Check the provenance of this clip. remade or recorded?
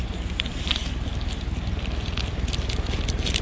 remade